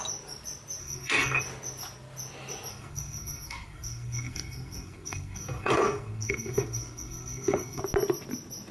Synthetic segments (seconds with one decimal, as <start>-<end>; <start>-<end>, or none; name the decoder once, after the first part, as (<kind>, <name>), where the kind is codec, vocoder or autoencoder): 0.8-1.4 (codec, SNAC); 2.7-7.8